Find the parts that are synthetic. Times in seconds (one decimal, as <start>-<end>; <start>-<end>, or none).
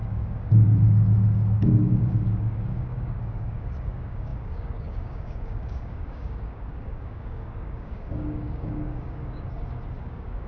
0.0-10.5